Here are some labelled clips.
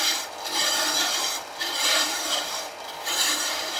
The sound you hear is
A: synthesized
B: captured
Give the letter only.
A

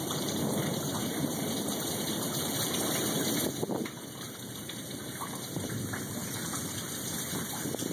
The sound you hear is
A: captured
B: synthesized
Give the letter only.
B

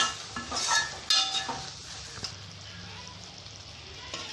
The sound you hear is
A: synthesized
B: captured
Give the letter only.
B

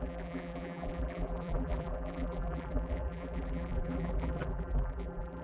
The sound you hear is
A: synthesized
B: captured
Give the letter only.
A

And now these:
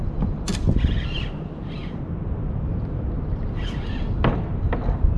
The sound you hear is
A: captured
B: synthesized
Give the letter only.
A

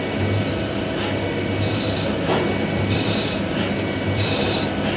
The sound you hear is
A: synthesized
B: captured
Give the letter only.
A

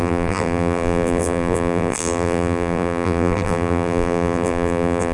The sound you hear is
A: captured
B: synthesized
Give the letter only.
B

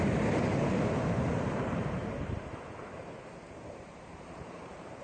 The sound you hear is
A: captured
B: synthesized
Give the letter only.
B